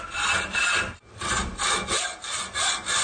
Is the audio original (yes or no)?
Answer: yes